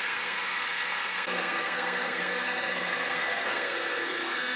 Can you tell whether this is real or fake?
fake